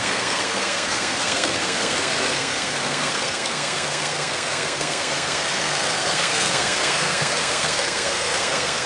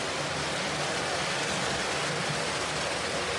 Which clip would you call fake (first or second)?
first